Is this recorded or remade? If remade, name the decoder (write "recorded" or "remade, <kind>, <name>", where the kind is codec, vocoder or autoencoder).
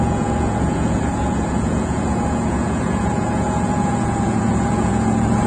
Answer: remade, vocoder, Vocos